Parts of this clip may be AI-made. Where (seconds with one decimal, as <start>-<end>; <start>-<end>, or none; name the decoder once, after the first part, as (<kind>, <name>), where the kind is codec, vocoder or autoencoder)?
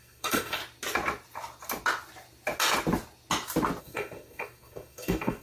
0.0-0.6 (codec, SNAC); 3.8-5.4